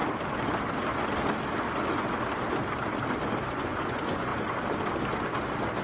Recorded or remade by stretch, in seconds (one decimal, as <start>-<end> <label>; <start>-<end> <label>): 0.0-3.5 recorded; 3.5-4.3 remade; 4.3-5.8 recorded

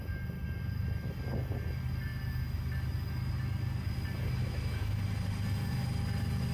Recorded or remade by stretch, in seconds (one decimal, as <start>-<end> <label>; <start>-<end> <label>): 0.0-4.4 recorded; 4.4-5.0 remade; 5.0-6.5 recorded

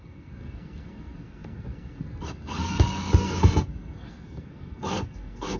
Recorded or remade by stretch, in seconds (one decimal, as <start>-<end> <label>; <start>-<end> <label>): 0.0-5.6 remade

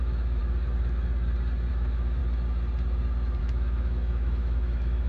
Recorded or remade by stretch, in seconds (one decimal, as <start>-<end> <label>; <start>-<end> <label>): 0.0-0.4 remade; 0.4-1.7 recorded; 1.7-2.2 remade; 2.2-3.4 recorded; 3.4-5.1 remade